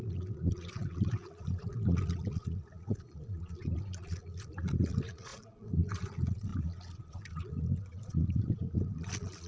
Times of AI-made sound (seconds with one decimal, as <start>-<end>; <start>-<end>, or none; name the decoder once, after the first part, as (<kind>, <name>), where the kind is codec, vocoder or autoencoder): 0.0-9.5 (vocoder, Vocos)